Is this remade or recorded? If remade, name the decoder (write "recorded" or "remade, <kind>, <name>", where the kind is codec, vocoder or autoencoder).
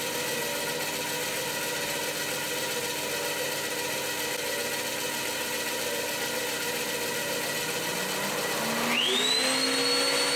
recorded